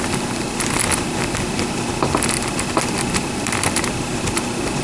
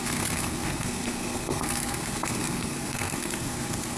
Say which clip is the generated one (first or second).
second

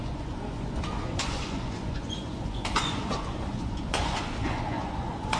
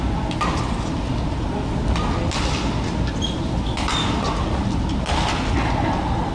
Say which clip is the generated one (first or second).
first